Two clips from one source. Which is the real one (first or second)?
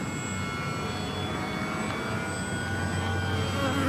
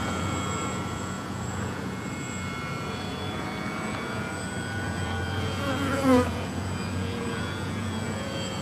first